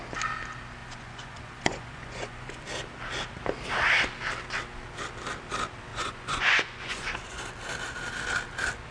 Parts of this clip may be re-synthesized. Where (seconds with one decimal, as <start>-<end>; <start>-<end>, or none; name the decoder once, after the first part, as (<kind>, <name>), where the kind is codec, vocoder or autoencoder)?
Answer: 0.8-2.6 (vocoder, Vocos); 5.9-7.4